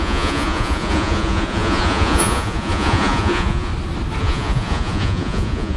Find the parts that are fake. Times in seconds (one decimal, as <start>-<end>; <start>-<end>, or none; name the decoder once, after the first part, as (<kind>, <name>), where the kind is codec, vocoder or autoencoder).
0.0-3.7 (vocoder, Vocos); 4.2-5.8